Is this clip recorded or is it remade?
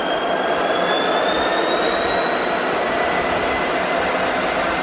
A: recorded